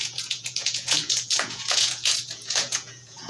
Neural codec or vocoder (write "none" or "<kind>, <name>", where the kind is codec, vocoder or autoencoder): vocoder, Vocos